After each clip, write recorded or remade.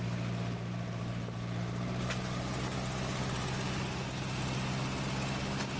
recorded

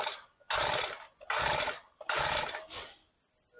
recorded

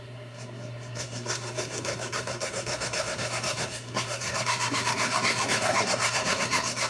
remade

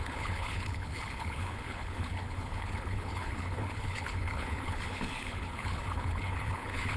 remade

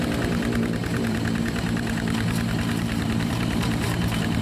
remade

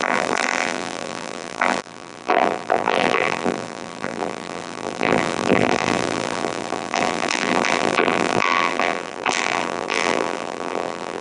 remade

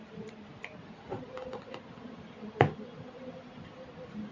recorded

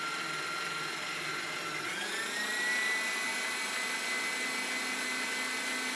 recorded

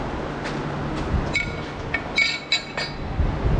recorded